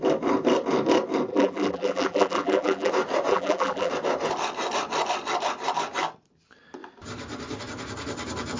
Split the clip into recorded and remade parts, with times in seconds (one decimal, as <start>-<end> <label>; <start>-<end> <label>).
0.0-1.3 recorded; 1.3-2.9 remade; 2.9-3.3 recorded; 3.3-3.9 remade; 3.9-8.6 recorded